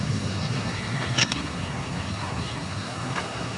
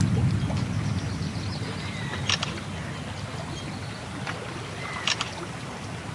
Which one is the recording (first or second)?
second